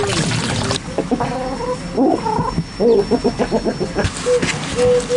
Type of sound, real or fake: real